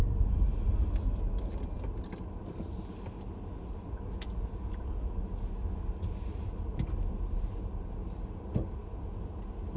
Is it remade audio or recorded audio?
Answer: recorded